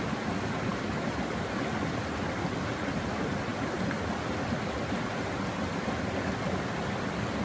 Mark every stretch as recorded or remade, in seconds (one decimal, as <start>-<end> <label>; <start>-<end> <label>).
0.0-7.4 recorded